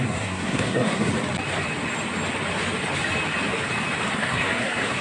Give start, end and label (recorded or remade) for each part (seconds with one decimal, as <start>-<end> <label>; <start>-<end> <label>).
0.0-1.1 remade; 1.1-4.1 recorded; 4.1-5.0 remade